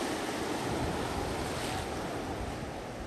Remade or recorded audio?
recorded